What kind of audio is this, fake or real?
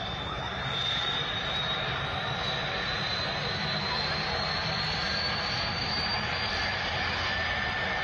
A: fake